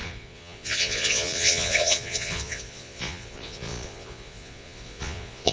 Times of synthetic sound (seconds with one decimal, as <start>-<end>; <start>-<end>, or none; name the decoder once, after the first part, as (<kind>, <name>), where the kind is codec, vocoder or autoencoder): 0.0-5.5 (vocoder, Vocos)